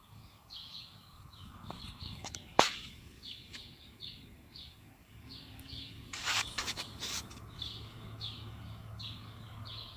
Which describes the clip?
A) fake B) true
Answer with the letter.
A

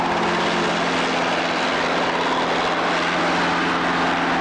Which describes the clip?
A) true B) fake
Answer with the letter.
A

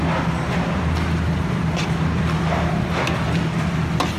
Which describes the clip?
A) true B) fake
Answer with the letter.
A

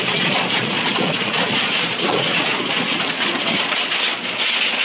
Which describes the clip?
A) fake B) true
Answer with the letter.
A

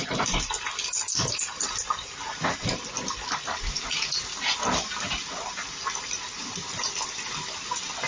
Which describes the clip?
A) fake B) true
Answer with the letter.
B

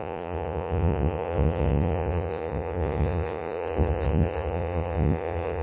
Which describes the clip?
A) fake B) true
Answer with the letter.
A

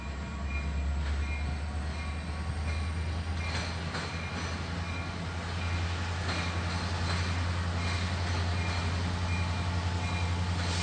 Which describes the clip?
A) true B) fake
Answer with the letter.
A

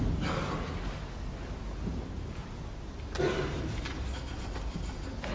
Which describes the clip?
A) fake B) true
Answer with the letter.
B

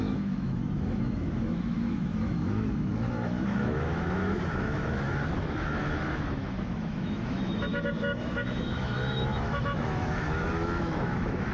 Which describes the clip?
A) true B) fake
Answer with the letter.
B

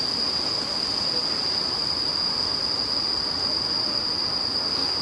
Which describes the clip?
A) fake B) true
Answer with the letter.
B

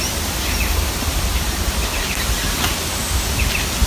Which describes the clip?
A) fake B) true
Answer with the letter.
B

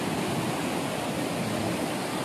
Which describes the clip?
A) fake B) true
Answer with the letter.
B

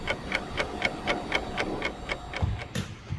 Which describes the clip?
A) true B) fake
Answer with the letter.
A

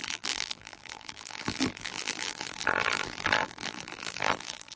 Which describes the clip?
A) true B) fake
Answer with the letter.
B